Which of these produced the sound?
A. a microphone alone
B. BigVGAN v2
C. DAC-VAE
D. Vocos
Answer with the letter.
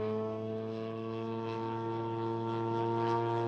C